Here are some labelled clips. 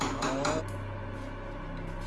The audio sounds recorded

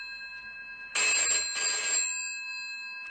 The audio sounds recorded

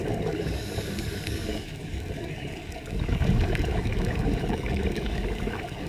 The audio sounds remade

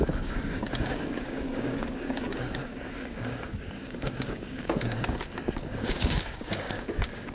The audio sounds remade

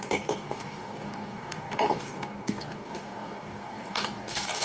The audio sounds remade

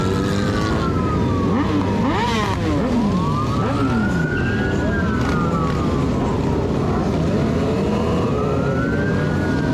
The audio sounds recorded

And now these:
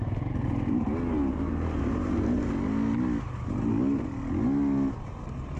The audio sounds recorded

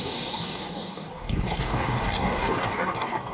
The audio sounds remade